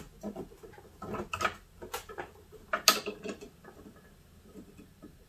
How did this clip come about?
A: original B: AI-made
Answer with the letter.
A